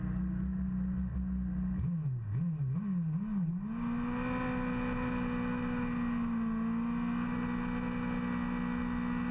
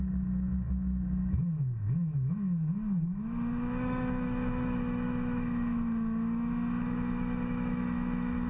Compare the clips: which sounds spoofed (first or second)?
second